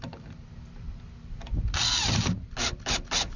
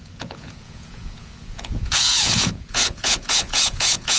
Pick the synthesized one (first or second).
second